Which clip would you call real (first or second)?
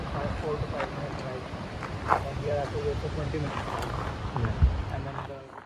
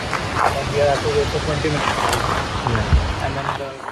second